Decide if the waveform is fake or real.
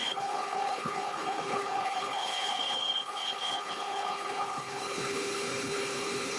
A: fake